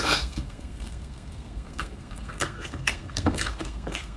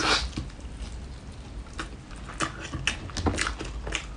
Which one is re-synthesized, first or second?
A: first